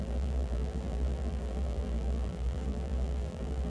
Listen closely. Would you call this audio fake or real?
fake